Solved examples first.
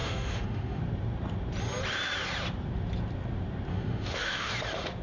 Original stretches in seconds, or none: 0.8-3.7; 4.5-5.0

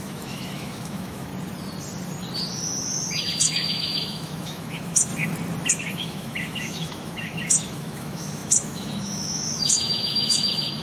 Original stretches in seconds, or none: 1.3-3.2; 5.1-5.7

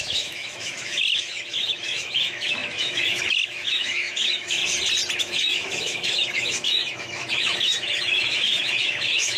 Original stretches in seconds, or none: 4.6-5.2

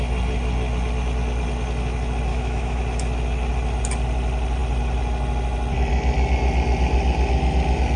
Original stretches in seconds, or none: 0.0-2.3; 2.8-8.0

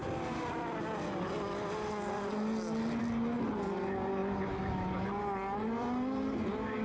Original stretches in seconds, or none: 0.0-6.8

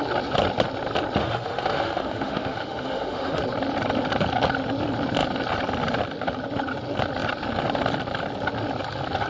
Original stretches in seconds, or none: 0.0-1.2; 3.4-9.3

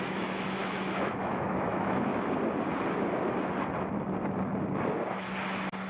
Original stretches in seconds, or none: 2.1-5.9

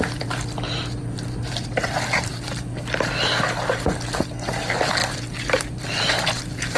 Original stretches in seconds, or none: 0.0-6.8